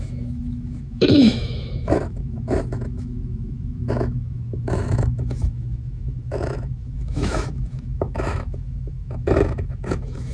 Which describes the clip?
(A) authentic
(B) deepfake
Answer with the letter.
B